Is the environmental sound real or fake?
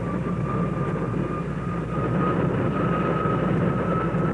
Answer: fake